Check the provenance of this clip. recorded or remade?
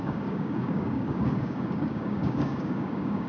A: remade